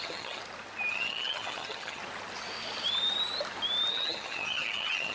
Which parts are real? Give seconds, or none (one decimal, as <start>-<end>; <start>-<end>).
0.4-0.9; 2.0-3.9